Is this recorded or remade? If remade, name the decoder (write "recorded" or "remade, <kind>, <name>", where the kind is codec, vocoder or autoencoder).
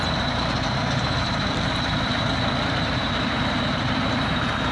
remade, vocoder, BigVGAN v2